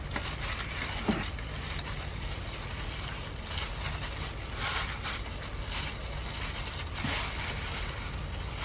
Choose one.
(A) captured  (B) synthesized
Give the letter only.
A